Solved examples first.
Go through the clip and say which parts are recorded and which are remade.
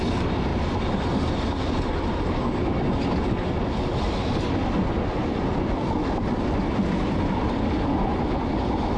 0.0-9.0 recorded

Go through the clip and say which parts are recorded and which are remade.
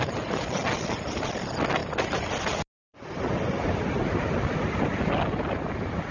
0.0-6.1 recorded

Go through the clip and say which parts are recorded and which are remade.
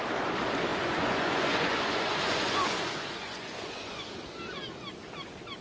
0.0-0.7 recorded; 0.7-4.1 remade; 4.1-5.6 recorded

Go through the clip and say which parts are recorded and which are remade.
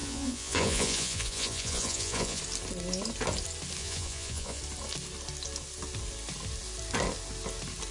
0.0-2.4 remade; 2.4-3.8 recorded; 3.8-4.6 remade; 4.6-7.9 recorded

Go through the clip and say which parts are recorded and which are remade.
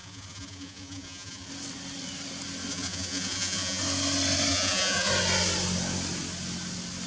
0.0-1.5 remade; 1.5-2.7 recorded; 2.7-3.8 remade; 3.8-4.5 recorded; 4.5-5.1 remade; 5.1-7.1 recorded